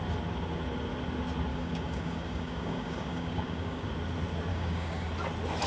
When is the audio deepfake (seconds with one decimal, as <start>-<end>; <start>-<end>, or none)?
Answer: 1.5-3.9; 4.5-5.1